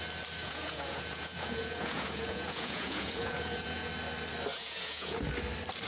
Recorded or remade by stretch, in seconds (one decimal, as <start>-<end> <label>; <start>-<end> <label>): 0.0-0.4 recorded; 0.4-3.9 remade; 3.9-4.5 recorded; 4.5-5.3 remade; 5.3-5.9 recorded